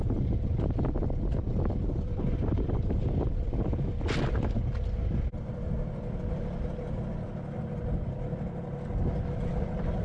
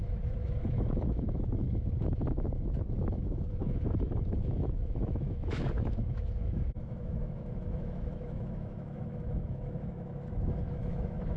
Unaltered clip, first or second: first